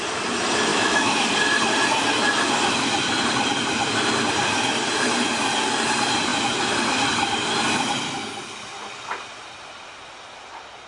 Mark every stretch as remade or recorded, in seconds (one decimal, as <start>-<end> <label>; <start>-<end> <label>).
0.0-0.7 recorded; 0.7-1.2 remade; 1.2-10.9 recorded